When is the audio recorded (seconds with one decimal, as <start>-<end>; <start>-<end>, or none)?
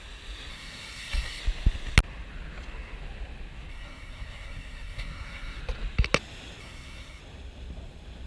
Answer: 0.0-0.5; 1.4-3.7; 5.6-6.6; 7.2-8.3